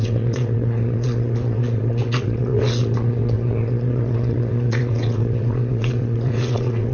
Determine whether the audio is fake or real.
fake